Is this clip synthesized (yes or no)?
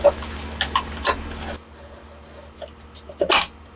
no